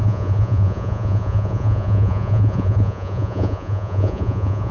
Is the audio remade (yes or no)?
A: yes